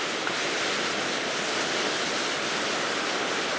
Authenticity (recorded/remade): recorded